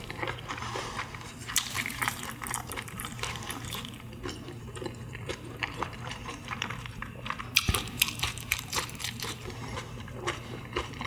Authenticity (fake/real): fake